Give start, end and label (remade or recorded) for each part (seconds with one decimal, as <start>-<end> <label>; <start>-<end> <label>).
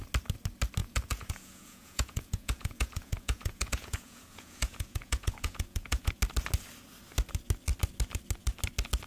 0.0-0.8 recorded; 0.8-6.1 remade; 6.1-9.1 recorded